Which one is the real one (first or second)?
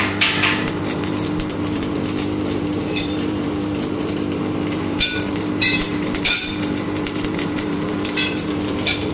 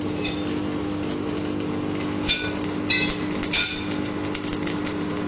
second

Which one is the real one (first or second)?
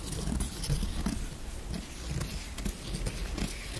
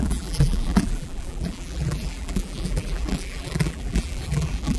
first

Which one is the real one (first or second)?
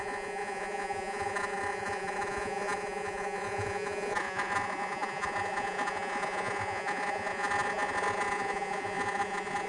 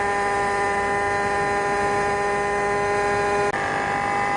second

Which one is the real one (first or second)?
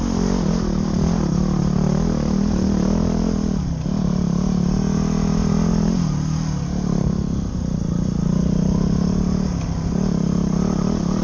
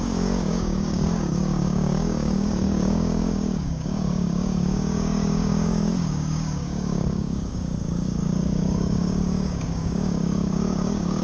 first